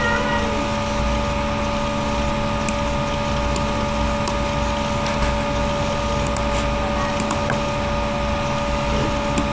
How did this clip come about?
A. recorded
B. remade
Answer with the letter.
A